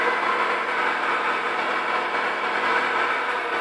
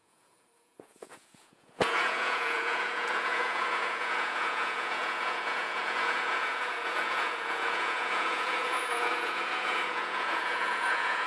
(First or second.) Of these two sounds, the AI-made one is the second